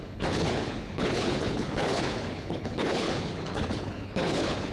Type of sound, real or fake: fake